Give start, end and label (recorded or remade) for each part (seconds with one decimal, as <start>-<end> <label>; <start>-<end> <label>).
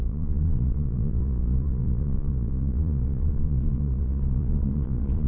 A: 0.0-5.3 remade